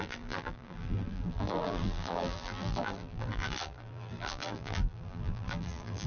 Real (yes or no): no